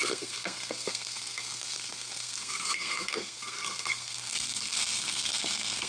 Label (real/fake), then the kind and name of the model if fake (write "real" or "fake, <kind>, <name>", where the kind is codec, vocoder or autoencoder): fake, codec, SNAC